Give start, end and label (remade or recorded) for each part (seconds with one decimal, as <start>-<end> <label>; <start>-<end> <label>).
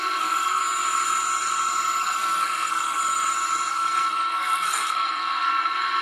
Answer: 0.0-0.6 remade; 0.6-2.0 recorded; 2.0-3.0 remade; 3.0-3.7 recorded; 3.7-6.0 remade